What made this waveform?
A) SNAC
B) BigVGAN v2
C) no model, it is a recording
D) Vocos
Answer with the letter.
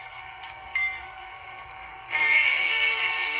A